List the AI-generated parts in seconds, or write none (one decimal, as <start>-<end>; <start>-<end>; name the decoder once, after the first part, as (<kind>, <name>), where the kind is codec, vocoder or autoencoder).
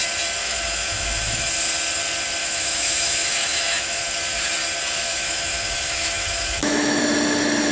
0.4-1.5 (autoencoder, DAC-VAE); 2.4-4.0; 5.1-7.0